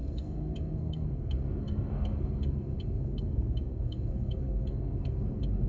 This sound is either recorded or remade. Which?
remade